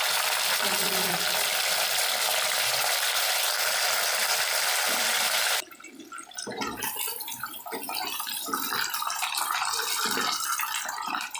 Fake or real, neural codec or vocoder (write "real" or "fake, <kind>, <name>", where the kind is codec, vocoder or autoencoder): fake, vocoder, BigVGAN v2